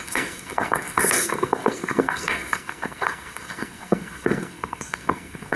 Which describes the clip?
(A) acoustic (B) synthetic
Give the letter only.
B